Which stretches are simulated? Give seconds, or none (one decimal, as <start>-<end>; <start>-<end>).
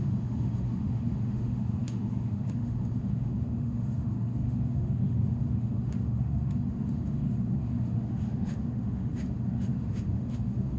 0.0-10.8